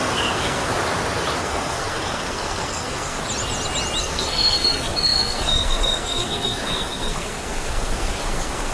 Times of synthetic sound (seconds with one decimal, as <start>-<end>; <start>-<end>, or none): 0.0-0.7; 1.4-3.2; 4.0-8.7